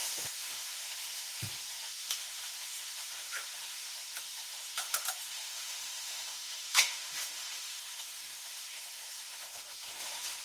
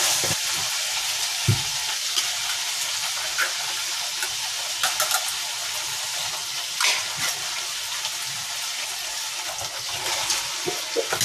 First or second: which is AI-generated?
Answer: first